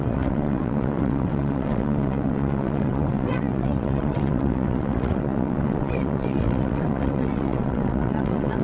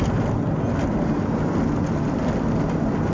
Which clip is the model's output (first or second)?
first